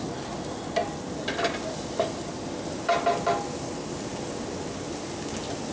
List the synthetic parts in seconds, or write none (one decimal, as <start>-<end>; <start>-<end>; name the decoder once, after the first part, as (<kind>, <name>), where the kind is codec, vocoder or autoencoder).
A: none